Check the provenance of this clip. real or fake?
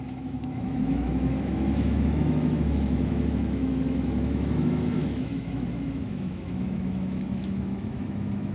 fake